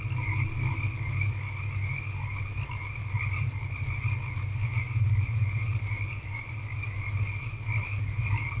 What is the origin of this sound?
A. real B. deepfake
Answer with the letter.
A